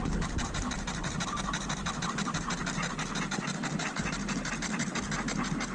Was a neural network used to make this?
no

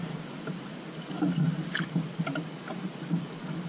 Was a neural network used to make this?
no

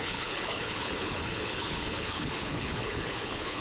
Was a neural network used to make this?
yes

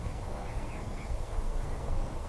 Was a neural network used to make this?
yes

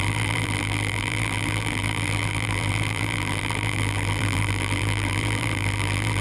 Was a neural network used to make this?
yes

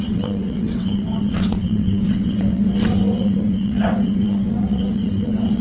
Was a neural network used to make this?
yes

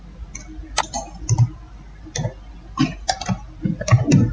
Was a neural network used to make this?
no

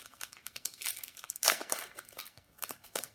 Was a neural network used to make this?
yes